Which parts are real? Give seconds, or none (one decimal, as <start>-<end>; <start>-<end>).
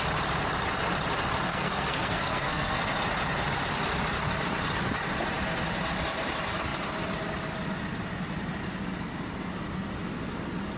0.0-1.5; 2.8-10.8